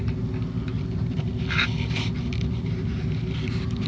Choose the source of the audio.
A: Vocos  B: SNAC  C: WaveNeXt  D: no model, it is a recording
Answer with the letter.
D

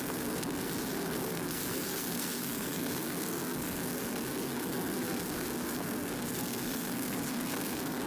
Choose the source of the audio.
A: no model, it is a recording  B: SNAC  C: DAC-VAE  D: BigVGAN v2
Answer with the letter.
B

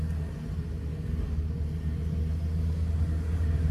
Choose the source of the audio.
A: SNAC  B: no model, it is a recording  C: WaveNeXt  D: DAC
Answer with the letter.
B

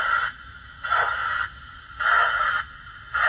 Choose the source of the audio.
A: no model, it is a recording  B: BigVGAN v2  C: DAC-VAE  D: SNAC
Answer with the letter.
A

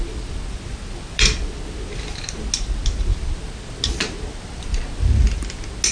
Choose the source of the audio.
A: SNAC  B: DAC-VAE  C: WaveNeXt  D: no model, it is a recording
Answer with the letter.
D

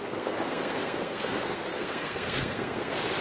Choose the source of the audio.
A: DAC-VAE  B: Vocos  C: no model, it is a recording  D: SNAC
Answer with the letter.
D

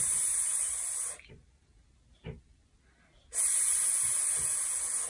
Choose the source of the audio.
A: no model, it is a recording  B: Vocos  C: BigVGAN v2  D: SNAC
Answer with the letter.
A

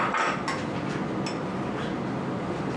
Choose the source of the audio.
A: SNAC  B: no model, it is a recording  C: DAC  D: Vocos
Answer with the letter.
B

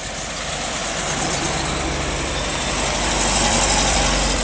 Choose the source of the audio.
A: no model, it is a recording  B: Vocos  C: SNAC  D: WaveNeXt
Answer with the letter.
A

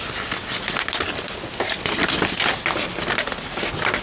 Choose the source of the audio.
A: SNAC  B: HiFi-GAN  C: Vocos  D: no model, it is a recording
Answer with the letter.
D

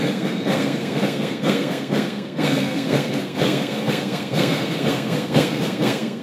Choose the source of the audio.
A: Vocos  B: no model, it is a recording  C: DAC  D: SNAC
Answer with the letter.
D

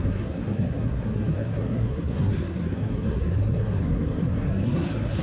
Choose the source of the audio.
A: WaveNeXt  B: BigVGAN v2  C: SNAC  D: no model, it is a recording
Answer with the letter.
C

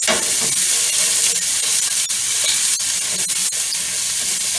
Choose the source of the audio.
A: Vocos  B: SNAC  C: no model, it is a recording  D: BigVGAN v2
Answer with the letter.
C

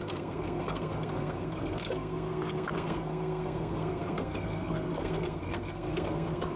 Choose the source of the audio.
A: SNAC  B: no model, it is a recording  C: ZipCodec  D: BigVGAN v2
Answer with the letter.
A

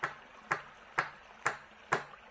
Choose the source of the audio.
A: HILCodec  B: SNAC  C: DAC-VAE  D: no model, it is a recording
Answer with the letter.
D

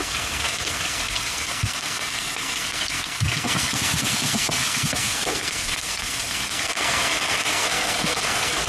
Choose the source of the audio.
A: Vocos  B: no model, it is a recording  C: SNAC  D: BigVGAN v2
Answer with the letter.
C